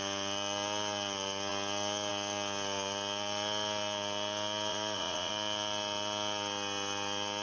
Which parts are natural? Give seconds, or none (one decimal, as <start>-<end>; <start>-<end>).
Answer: 0.0-4.7; 5.3-7.4